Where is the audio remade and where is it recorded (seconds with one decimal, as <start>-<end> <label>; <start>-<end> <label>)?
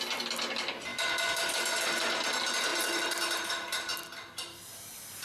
0.0-5.2 recorded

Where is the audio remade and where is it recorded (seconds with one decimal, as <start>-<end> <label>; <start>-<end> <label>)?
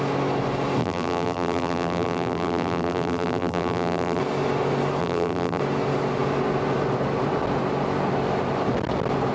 0.0-0.8 recorded; 0.8-4.2 remade; 4.2-5.0 recorded; 5.0-5.6 remade; 5.6-9.3 recorded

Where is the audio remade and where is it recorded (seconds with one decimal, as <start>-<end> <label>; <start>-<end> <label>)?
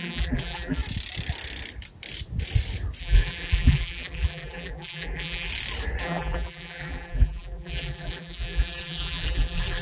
0.0-0.8 remade; 0.8-3.0 recorded; 3.0-5.5 remade; 5.5-6.0 recorded; 6.0-9.8 remade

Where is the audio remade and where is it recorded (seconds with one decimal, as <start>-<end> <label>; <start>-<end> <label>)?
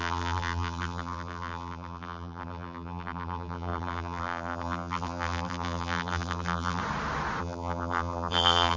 0.0-6.8 remade; 6.8-7.4 recorded; 7.4-8.8 remade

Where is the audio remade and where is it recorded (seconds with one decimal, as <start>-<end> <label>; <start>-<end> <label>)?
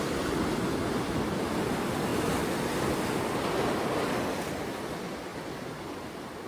0.0-5.3 recorded; 5.3-6.5 remade